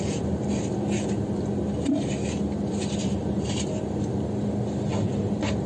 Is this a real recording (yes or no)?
yes